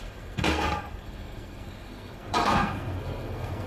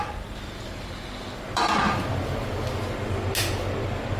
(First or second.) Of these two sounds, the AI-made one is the first